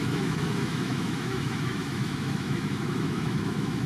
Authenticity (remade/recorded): remade